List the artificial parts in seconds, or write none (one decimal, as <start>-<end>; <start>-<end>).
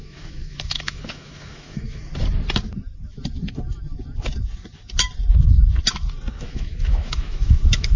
0.0-2.1; 6.3-8.0